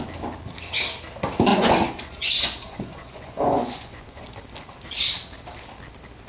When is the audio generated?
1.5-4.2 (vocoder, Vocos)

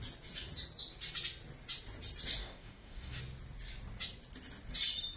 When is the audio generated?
2.4-3.2 (codec, DAC)

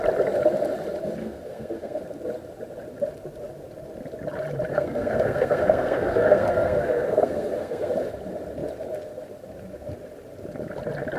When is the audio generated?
1.2-2.0 (codec, SNAC); 4.7-7.9

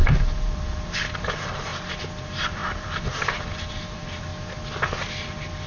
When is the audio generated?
0.0-1.7 (vocoder, BigVGAN v2); 2.2-4.3

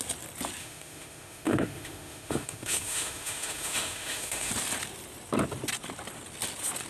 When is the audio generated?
0.6-4.5 (autoencoder, DAC-VAE)

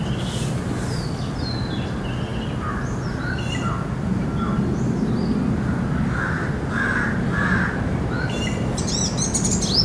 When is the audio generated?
none

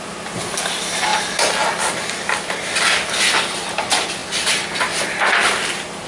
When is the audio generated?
none